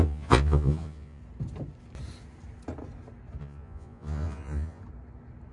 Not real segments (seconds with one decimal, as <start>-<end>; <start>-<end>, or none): 0.0-1.2; 3.4-4.8